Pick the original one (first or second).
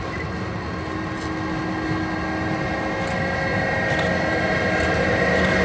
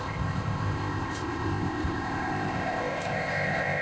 first